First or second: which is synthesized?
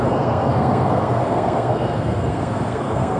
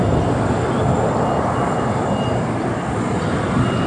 first